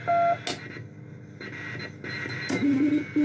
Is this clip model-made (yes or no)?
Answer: no